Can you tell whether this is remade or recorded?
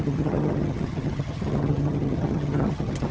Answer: remade